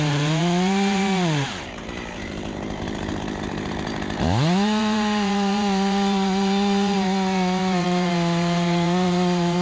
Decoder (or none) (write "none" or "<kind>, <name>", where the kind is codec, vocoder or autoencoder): vocoder, BigVGAN v2